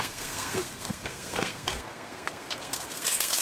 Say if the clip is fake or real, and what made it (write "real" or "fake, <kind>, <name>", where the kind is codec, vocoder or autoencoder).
fake, codec, SNAC